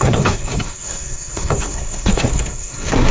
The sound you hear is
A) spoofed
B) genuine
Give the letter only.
A